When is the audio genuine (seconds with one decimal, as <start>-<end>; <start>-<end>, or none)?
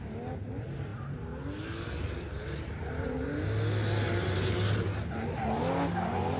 0.0-6.4